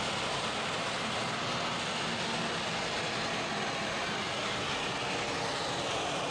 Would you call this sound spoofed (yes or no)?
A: no